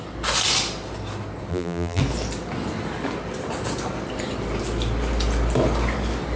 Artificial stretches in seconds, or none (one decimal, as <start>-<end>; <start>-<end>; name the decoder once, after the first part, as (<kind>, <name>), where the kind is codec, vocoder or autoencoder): 1.5-2.0 (vocoder, BigVGAN v2)